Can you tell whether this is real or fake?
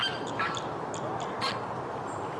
real